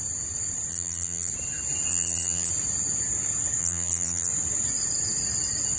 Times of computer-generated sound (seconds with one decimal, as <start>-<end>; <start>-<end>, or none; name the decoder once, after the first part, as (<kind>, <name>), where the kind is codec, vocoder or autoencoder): 0.7-1.3 (vocoder, BigVGAN v2); 1.9-2.5; 3.6-4.3